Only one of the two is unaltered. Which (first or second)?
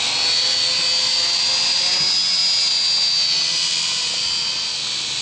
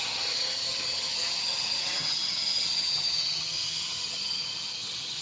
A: first